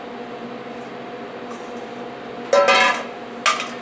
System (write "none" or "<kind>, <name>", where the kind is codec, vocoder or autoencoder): none